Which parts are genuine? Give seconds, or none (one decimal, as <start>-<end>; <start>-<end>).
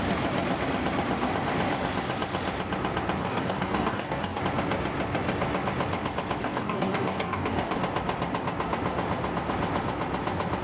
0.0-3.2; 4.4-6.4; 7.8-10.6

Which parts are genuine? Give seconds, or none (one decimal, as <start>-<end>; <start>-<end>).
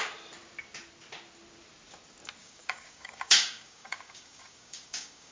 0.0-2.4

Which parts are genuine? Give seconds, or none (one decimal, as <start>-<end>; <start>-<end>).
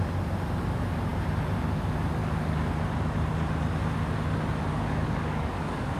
0.0-2.2; 2.7-4.7